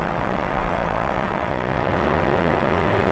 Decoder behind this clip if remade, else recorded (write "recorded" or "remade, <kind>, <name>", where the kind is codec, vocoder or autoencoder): remade, vocoder, WaveNeXt